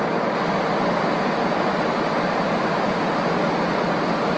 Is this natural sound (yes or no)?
yes